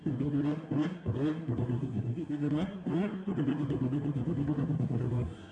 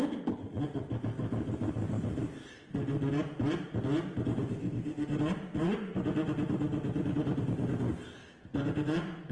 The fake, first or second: first